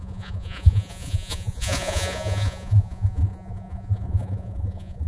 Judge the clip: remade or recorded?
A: remade